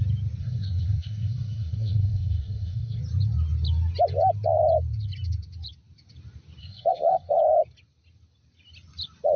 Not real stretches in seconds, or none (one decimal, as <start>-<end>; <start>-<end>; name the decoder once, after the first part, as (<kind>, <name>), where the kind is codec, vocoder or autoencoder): 0.4-3.0 (codec, SNAC); 6.6-7.4